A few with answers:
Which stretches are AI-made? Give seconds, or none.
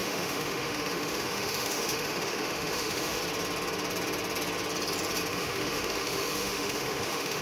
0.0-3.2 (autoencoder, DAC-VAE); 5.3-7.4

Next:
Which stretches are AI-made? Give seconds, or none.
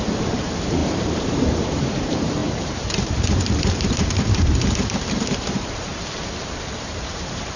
0.0-5.9 (vocoder, BigVGAN v2); 6.8-7.6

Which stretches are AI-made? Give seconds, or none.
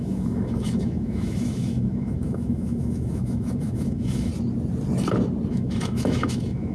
0.0-4.3 (autoencoder, DAC-VAE); 5.5-6.7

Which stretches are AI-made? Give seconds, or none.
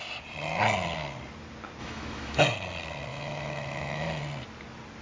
1.8-2.4 (autoencoder, DAC-VAE); 3.1-4.2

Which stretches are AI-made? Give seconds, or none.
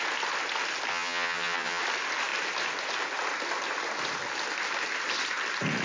0.9-1.8 (vocoder, HiFi-GAN)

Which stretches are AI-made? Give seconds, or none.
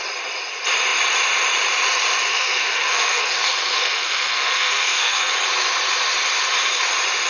2.3-5.3 (codec, SNAC)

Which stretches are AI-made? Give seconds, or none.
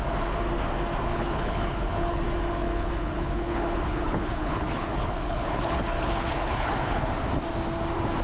1.1-2.2 (codec, HILCodec); 2.6-7.1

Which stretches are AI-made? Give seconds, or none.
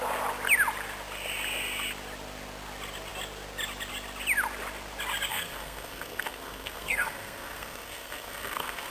5.3-8.9 (codec, SNAC)